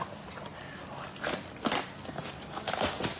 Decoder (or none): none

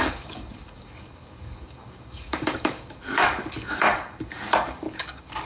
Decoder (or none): codec, DAC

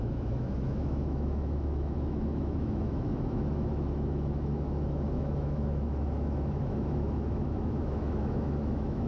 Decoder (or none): autoencoder, DAC-VAE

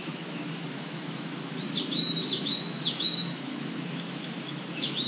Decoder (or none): autoencoder, DAC-VAE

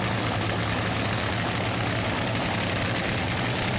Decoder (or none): none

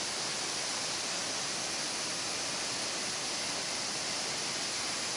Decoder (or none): none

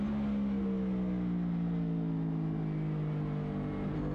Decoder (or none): none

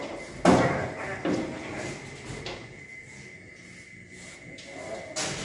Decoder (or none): none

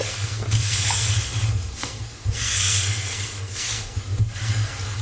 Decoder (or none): codec, SNAC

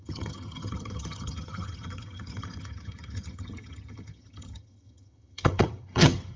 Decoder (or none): vocoder, HiFi-GAN